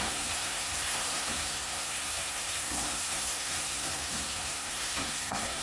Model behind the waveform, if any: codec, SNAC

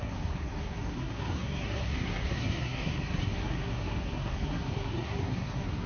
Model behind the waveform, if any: codec, SNAC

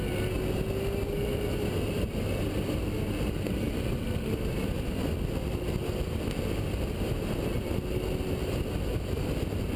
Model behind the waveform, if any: none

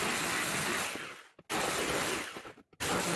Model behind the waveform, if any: none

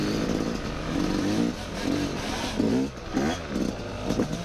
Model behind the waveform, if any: none